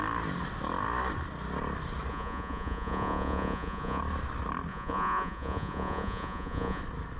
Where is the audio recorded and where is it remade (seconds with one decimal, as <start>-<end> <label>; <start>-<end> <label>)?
0.0-2.1 recorded; 2.1-4.0 remade; 4.0-4.7 recorded; 4.7-6.8 remade; 6.8-7.2 recorded